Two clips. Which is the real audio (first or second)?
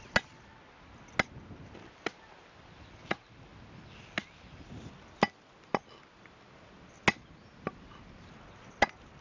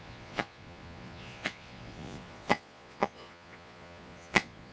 first